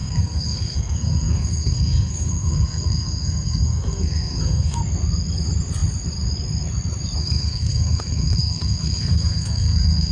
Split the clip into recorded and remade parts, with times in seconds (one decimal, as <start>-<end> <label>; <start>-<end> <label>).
0.0-4.8 remade; 4.8-7.2 recorded; 7.2-10.1 remade